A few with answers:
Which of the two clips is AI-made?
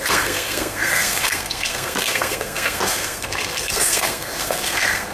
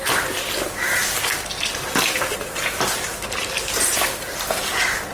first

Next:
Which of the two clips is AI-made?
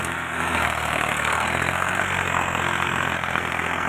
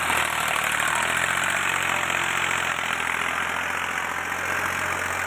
first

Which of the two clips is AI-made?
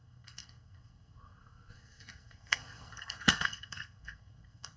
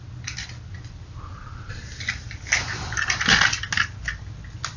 first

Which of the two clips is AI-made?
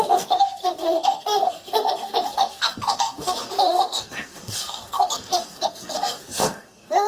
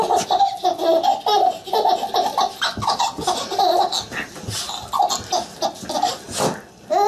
first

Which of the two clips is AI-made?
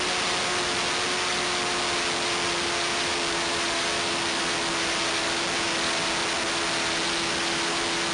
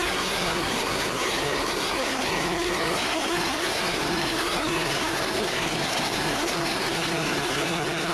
second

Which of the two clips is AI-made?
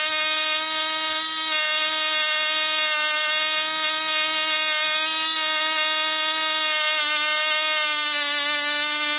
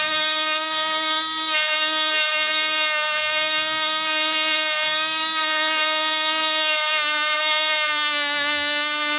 second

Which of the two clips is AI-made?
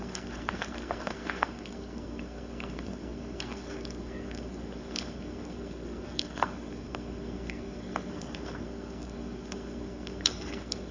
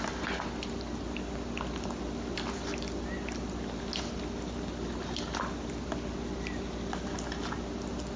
first